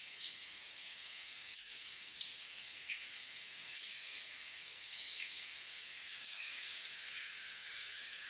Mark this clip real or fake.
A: fake